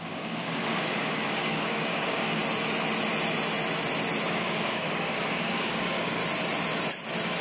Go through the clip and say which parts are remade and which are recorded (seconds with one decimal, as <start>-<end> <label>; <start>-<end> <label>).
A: 0.0-2.4 remade; 2.4-4.3 recorded; 4.3-6.2 remade; 6.2-7.4 recorded